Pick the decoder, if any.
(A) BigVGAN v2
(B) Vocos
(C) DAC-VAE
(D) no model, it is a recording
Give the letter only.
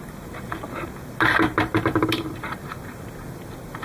A